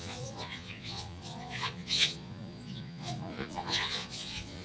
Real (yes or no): no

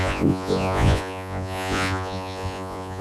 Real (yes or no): no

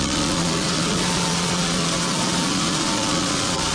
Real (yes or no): no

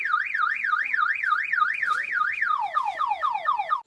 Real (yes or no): yes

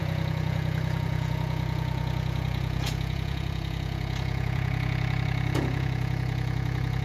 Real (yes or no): no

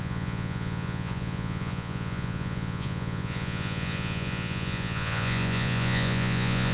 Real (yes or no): no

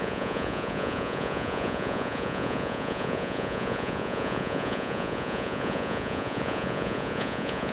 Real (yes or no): no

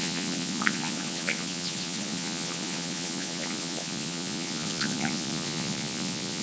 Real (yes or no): no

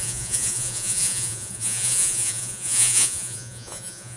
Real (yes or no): no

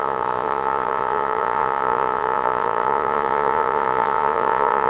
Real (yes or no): no